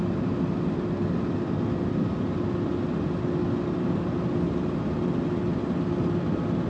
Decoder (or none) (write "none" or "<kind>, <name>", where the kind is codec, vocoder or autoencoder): none